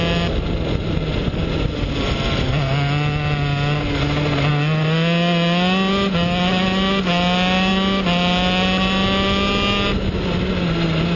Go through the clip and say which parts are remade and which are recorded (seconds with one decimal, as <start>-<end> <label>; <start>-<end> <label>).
0.0-11.2 recorded